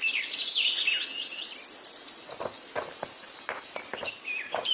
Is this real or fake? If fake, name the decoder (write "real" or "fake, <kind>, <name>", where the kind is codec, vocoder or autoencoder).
real